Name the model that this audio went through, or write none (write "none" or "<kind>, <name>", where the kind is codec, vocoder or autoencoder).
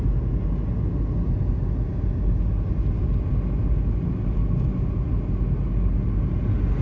none